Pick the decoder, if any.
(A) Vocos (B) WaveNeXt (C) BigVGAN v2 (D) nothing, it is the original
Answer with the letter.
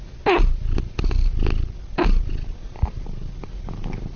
D